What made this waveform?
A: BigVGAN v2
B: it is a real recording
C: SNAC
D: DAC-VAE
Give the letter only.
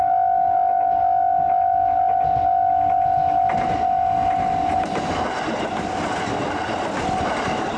B